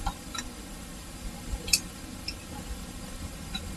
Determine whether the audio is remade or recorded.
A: remade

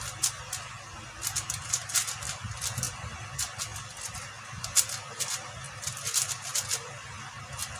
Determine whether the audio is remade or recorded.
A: recorded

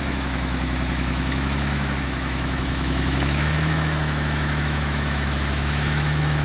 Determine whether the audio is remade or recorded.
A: remade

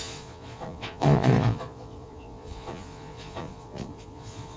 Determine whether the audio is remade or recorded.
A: remade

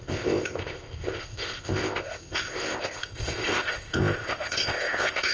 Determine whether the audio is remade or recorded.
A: remade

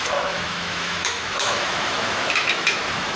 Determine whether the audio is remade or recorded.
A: remade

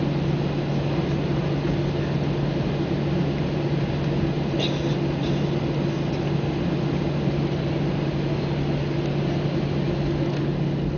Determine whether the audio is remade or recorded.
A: recorded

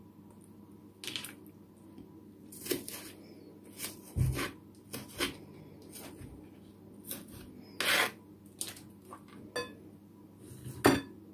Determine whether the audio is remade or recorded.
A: recorded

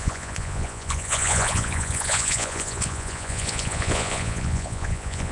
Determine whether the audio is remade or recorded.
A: remade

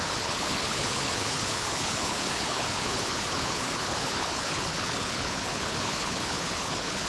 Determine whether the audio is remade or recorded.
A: remade